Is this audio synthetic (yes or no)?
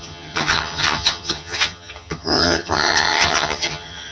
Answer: yes